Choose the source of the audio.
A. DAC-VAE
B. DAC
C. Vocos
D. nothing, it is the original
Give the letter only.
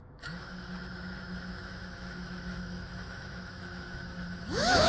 A